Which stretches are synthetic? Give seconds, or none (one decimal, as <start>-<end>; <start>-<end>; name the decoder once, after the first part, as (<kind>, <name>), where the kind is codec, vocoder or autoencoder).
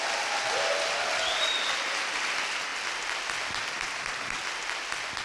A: none